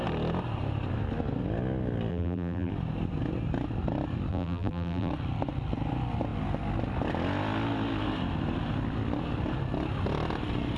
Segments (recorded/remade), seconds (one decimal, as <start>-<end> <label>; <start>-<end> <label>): 0.0-2.1 recorded; 2.1-2.7 remade; 2.7-4.3 recorded; 4.3-5.1 remade; 5.1-10.8 recorded